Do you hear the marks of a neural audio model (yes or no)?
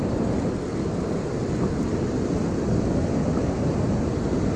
no